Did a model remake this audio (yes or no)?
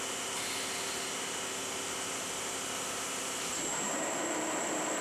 no